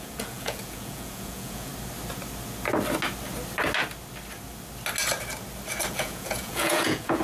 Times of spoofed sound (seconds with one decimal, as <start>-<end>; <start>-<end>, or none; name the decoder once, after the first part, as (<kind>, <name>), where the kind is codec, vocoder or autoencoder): 0.0-1.7 (vocoder, Vocos); 5.9-7.2